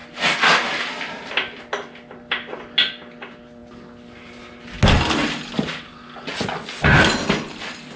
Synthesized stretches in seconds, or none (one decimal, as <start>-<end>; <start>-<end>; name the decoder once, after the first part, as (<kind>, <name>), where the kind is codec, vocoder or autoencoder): none